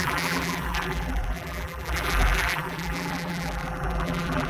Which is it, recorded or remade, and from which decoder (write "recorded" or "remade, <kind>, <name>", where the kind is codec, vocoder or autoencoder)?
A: remade, vocoder, BigVGAN v2